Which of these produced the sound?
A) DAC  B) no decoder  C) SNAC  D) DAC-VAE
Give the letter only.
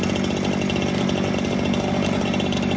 B